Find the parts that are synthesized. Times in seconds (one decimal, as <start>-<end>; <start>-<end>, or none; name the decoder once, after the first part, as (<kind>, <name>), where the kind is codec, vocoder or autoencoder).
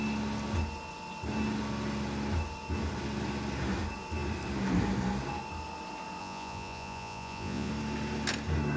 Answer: 6.2-7.7 (vocoder, Vocos)